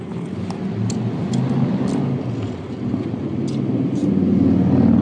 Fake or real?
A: real